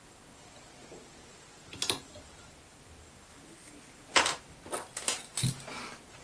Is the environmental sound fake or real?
real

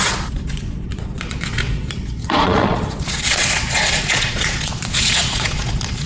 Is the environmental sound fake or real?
fake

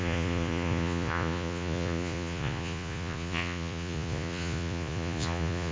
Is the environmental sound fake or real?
fake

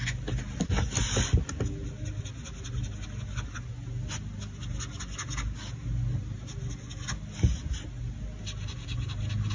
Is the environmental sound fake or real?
real